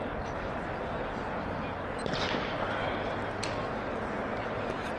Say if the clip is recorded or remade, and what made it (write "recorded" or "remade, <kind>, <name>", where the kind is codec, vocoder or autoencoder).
recorded